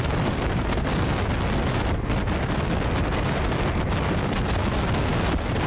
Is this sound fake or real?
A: real